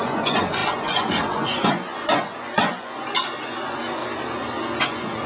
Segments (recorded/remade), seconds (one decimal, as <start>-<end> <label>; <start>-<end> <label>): 0.0-4.0 remade; 4.0-4.8 recorded; 4.8-5.3 remade